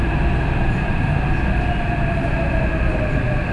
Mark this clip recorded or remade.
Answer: recorded